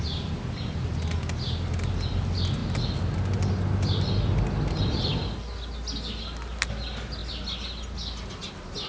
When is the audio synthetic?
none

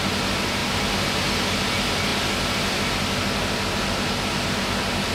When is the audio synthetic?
none